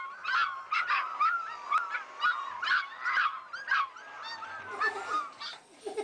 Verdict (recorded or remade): recorded